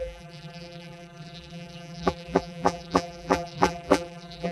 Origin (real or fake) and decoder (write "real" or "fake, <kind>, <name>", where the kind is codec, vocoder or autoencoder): fake, vocoder, BigVGAN v2